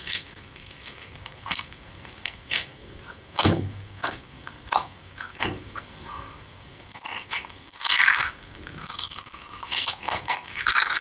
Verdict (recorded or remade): remade